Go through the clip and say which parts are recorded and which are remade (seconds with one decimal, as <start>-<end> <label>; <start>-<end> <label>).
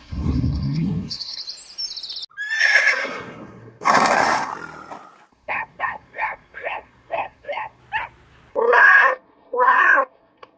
0.0-1.4 remade; 1.4-2.6 recorded; 2.6-4.5 remade; 4.5-5.3 recorded; 5.3-7.8 remade; 7.8-8.5 recorded; 8.5-10.6 remade